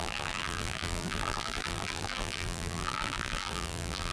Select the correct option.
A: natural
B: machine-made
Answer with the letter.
B